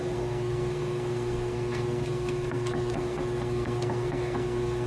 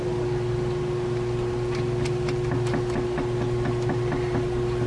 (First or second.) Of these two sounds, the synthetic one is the first